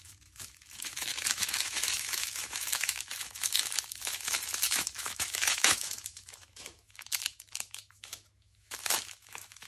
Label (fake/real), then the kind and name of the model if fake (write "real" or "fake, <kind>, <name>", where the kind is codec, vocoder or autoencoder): fake, autoencoder, DAC-VAE